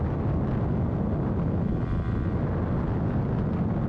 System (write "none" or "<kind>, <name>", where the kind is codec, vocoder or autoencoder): none